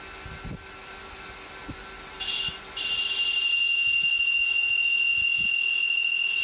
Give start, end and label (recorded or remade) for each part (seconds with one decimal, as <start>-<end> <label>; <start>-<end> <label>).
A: 0.0-6.4 recorded